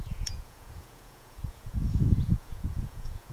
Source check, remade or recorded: remade